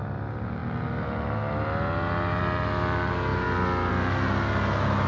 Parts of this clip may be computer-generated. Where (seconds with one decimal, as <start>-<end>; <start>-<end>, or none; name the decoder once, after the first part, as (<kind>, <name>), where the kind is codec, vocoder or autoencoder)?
none